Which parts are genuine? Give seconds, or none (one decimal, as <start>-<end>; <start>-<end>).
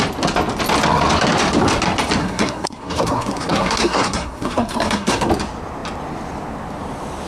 0.0-2.2; 5.3-7.3